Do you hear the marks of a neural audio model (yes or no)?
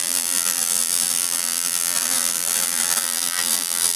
yes